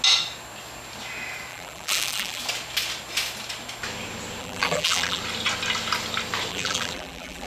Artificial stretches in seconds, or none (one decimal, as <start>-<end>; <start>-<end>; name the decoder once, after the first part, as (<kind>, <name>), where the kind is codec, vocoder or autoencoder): 1.5-2.4 (vocoder, BigVGAN v2); 4.4-5.2; 6.5-7.5